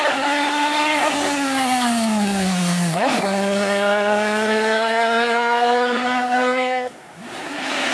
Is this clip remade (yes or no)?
yes